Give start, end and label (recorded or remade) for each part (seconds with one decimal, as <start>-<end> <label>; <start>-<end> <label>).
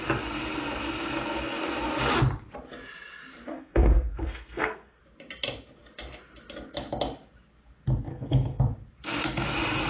0.0-3.5 recorded; 3.5-5.0 remade; 5.0-8.1 recorded; 8.1-8.6 remade; 8.6-9.9 recorded